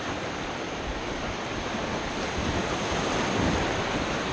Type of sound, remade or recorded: recorded